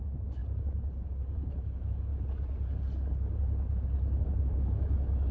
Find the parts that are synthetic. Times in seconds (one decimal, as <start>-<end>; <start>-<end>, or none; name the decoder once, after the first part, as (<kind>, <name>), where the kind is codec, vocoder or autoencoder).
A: 0.0-0.4 (autoencoder, DAC-VAE); 1.5-2.1; 4.2-5.3